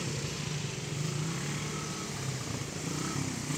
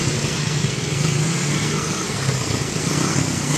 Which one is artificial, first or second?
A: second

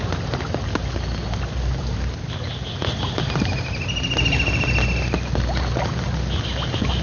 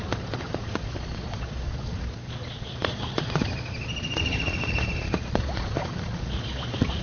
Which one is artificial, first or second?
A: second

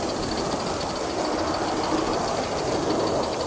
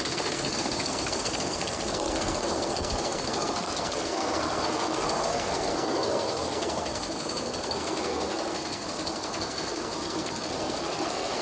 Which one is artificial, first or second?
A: second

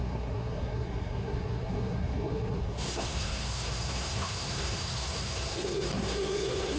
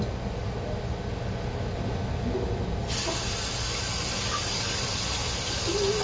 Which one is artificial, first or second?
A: first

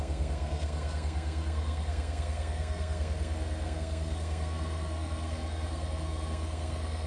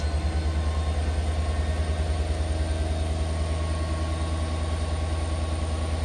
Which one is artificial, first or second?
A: first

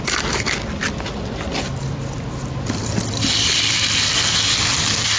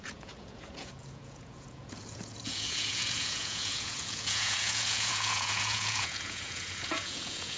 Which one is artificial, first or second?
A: second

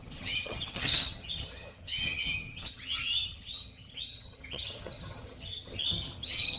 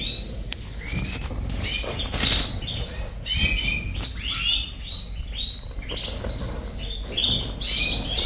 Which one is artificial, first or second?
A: first